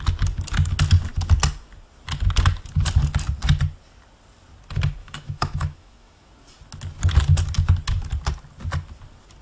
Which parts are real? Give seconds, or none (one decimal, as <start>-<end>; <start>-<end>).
0.0-5.0; 6.3-9.4